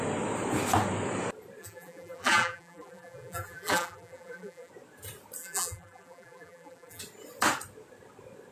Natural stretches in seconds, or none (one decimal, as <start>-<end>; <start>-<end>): 0.0-1.6; 4.7-5.4; 7.0-8.5